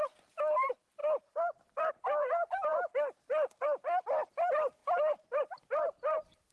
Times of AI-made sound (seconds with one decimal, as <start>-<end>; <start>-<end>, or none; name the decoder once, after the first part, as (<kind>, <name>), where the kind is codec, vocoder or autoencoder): none